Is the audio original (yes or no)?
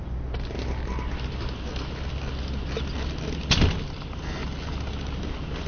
yes